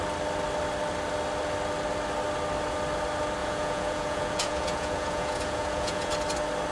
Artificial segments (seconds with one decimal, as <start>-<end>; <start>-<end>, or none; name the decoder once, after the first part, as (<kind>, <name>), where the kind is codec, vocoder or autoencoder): 3.4-6.1 (vocoder, Vocos)